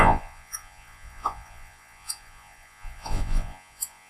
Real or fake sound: fake